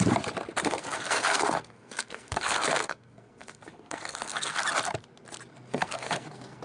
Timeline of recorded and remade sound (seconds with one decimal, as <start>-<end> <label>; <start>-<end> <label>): 0.0-0.6 recorded; 0.6-4.6 remade; 4.6-5.5 recorded; 5.5-6.6 remade